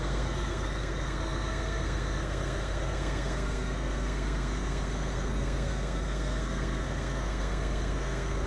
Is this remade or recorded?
remade